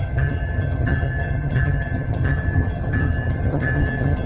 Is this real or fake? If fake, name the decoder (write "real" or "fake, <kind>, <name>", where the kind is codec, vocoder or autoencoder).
fake, vocoder, HiFi-GAN